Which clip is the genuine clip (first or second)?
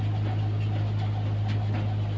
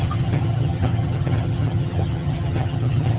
first